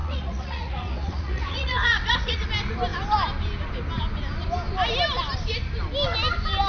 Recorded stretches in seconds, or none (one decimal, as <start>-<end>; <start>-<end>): 2.5-6.7